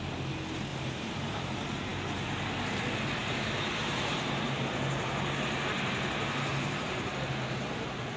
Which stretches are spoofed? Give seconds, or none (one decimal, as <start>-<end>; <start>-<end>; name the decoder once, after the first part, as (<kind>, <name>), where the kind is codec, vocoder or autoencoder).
0.7-1.4 (vocoder, BigVGAN v2); 3.2-4.7; 6.5-7.1